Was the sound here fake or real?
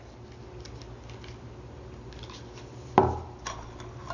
real